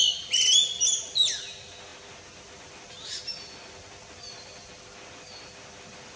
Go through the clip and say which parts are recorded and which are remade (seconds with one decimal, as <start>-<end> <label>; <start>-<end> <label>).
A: 0.0-6.2 recorded